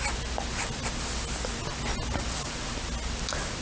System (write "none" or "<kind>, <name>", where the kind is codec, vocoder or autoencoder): none